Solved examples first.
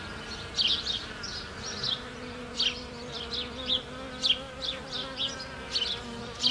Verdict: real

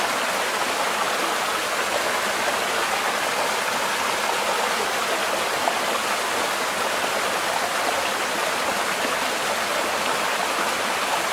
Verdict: real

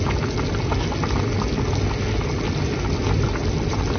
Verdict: real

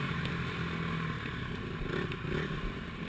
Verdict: real